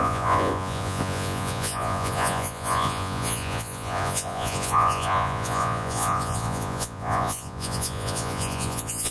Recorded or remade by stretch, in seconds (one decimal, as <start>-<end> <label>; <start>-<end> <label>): 0.0-9.1 remade